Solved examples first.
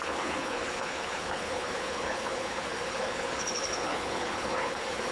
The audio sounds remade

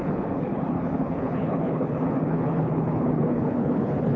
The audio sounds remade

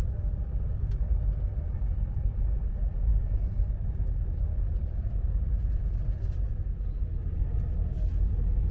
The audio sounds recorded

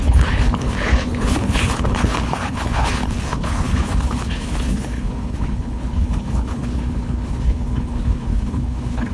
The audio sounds remade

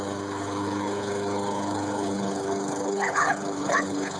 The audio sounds remade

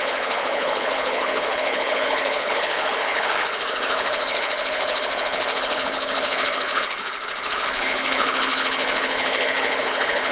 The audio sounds remade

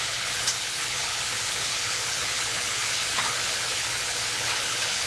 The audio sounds remade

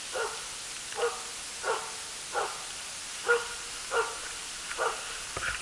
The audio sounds recorded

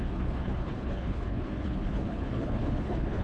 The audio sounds remade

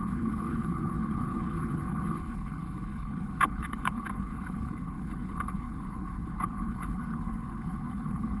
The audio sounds remade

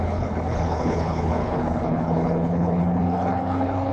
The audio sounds remade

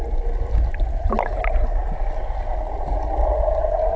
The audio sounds recorded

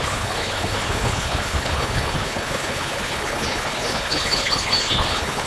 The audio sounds remade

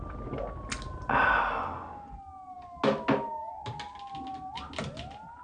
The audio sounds recorded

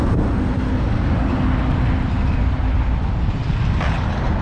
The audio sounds recorded